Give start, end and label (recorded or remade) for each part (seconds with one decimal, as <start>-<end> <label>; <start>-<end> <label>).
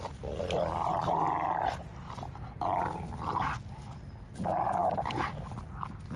0.0-6.2 recorded